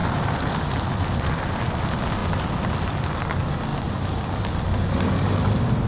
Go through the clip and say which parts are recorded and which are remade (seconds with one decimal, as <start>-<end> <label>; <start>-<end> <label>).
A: 0.0-1.4 remade; 1.4-3.7 recorded; 3.7-4.4 remade; 4.4-5.9 recorded